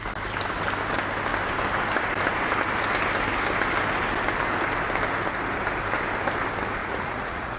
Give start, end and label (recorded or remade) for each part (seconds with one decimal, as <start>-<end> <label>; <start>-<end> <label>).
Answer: 0.0-6.8 recorded; 6.8-7.6 remade